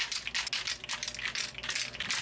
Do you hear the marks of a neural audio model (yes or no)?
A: no